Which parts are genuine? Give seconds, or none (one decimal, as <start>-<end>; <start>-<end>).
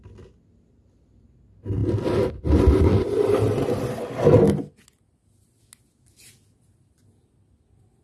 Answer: 0.0-8.0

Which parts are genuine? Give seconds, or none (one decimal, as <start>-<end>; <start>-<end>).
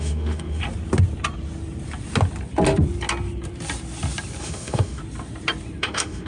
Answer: 0.6-4.4; 5.0-5.8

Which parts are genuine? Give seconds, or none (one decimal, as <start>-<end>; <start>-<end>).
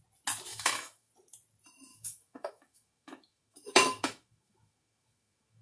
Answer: 0.0-0.5; 1.1-1.9